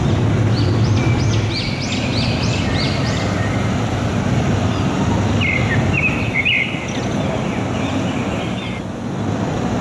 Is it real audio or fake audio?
real